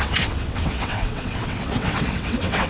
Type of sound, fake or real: fake